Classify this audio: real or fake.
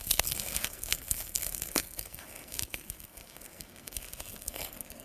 fake